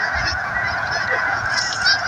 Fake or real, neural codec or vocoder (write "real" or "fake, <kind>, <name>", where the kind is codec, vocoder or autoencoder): fake, vocoder, Vocos